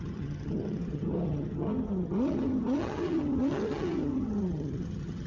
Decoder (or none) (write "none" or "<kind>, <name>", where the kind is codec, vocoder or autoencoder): vocoder, HiFi-GAN